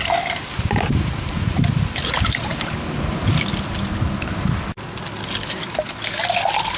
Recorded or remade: recorded